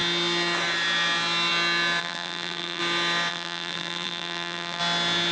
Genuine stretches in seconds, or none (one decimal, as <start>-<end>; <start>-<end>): 0.0-2.0; 2.8-3.3; 4.8-5.3